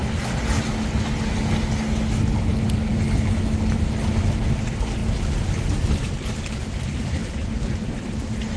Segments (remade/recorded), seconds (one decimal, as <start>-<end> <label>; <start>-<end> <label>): 0.0-8.6 recorded